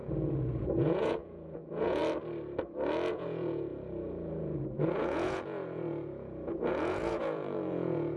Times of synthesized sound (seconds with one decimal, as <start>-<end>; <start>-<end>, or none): 0.0-2.0; 3.1-8.2